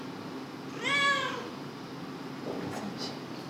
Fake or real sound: real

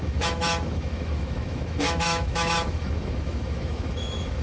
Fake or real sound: fake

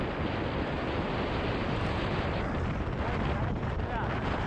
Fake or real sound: real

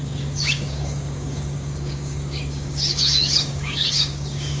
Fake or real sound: fake